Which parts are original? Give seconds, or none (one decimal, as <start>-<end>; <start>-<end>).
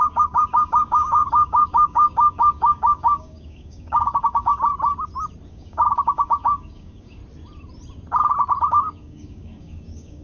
4.5-5.5; 7.2-8.7